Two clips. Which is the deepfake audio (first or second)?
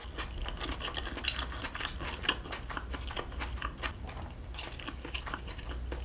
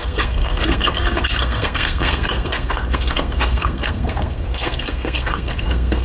second